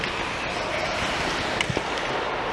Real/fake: real